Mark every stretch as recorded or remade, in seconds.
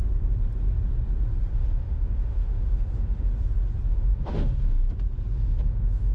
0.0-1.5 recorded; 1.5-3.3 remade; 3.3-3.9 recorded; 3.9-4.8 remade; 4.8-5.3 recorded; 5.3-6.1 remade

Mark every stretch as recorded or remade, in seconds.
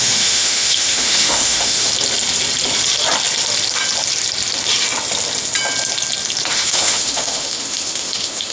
0.0-1.9 remade; 1.9-6.5 recorded; 6.5-8.5 remade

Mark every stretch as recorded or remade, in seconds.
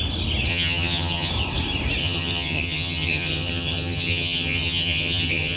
0.0-0.5 recorded; 0.5-1.3 remade; 1.3-2.0 recorded; 2.0-5.6 remade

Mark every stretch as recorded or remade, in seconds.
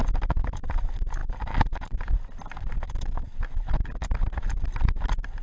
0.0-5.4 recorded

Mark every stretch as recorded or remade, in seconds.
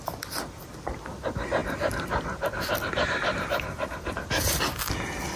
0.0-5.4 recorded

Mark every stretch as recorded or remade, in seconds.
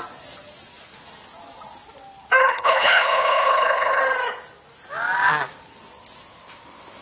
0.0-2.4 recorded; 2.4-4.0 remade; 4.0-7.0 recorded